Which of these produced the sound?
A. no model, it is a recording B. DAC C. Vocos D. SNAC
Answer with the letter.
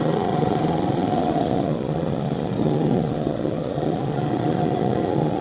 C